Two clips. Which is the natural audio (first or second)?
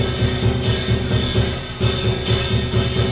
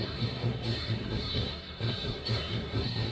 first